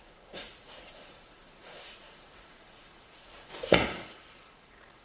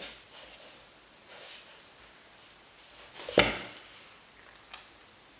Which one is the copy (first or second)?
first